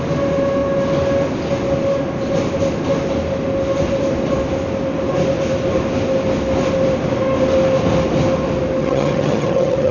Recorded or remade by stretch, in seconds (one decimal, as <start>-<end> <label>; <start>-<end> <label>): 0.0-8.8 recorded; 8.8-9.9 remade